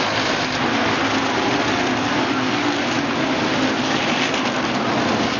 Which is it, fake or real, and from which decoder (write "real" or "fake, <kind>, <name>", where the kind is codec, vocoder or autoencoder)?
real